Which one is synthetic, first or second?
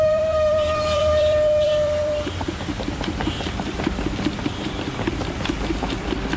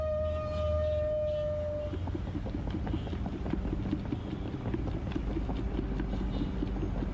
first